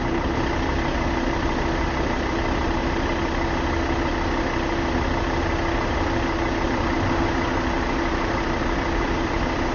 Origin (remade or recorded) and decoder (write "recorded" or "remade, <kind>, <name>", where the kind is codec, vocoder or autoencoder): recorded